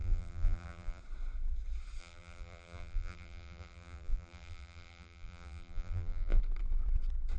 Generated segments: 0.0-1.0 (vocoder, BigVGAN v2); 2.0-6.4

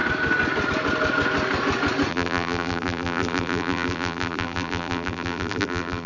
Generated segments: 2.1-6.1 (vocoder, BigVGAN v2)

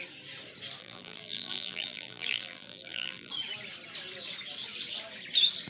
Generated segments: 0.8-3.3 (vocoder, BigVGAN v2)